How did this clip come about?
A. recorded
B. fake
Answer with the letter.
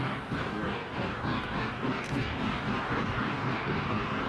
B